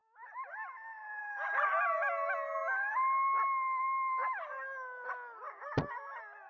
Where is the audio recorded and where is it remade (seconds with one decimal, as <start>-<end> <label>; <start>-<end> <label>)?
0.0-6.5 recorded